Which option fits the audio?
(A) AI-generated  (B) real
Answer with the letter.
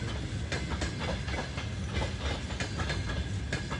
B